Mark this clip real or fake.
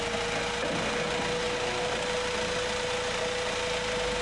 real